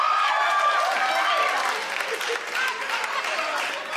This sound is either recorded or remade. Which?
recorded